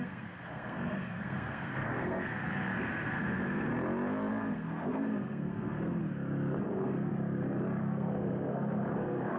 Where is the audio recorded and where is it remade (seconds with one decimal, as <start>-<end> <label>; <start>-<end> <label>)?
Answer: 0.0-3.7 remade; 3.7-4.3 recorded; 4.3-6.0 remade; 6.0-6.6 recorded; 6.6-7.1 remade; 7.1-7.8 recorded; 7.8-9.4 remade